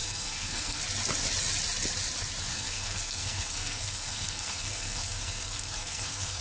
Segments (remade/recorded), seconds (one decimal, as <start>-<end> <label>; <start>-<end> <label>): 0.0-0.8 remade; 0.8-2.5 recorded; 2.5-6.4 remade